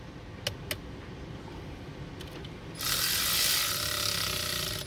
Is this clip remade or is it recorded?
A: recorded